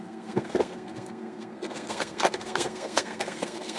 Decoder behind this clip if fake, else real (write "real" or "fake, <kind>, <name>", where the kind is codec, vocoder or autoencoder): fake, codec, SNAC